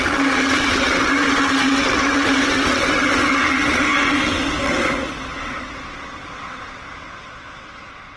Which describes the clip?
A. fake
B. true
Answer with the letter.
A